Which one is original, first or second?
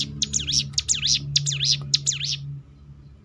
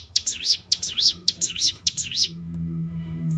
first